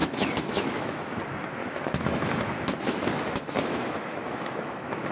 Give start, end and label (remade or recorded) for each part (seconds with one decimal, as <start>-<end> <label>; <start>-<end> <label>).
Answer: 0.0-1.2 remade; 1.2-1.6 recorded; 1.6-5.1 remade